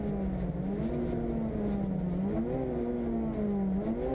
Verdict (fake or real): real